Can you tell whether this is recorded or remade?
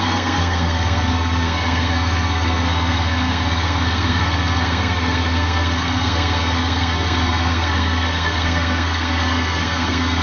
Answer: remade